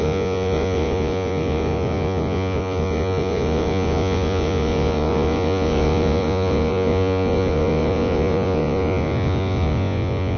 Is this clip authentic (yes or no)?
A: no